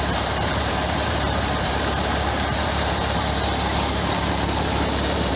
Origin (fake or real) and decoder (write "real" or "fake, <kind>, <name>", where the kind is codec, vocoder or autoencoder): fake, vocoder, BigVGAN v2